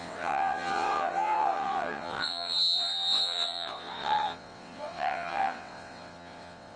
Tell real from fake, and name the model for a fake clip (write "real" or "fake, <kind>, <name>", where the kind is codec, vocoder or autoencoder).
fake, vocoder, WaveNeXt